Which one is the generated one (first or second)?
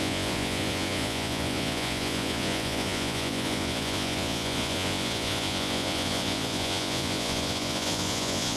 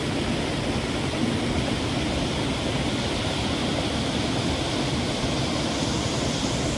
first